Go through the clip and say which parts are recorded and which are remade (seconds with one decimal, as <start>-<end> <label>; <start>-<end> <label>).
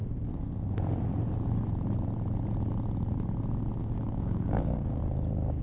0.0-3.8 recorded; 3.8-5.0 remade; 5.0-5.6 recorded